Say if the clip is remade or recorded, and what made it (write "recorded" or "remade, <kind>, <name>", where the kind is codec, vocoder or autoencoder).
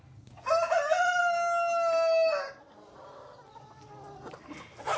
recorded